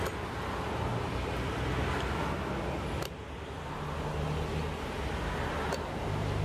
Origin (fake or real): real